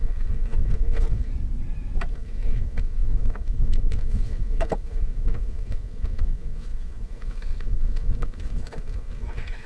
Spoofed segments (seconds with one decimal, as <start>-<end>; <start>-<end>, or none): 0.0-1.3; 2.1-9.7